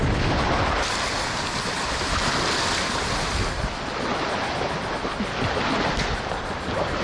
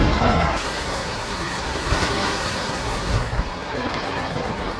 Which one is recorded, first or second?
first